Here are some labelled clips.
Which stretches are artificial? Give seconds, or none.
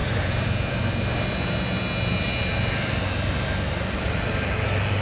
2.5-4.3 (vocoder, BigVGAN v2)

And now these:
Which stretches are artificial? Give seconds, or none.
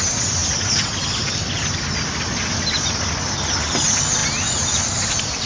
none